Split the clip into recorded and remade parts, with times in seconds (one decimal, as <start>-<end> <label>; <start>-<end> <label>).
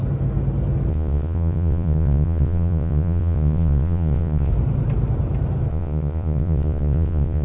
0.0-0.9 recorded; 0.9-4.5 remade; 4.5-5.7 recorded; 5.7-7.4 remade